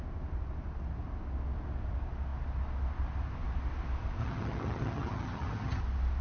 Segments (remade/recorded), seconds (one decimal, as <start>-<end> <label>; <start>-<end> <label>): 0.0-4.2 recorded; 4.2-5.8 remade; 5.8-6.2 recorded